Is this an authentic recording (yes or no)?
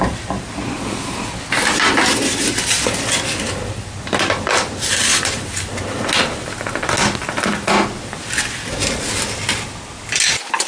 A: yes